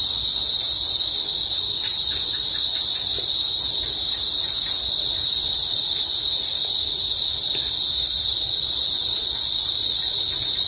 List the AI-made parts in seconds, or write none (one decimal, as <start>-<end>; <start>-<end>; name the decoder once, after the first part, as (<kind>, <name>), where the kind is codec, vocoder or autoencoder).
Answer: 8.5-10.1 (vocoder, Vocos)